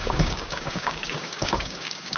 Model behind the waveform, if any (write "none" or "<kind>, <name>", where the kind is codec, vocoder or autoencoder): codec, DAC